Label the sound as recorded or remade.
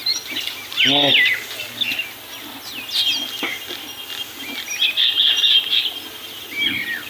recorded